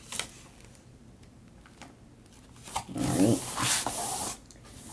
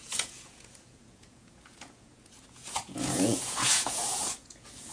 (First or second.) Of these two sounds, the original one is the first